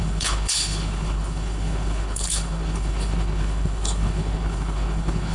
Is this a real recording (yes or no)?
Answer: no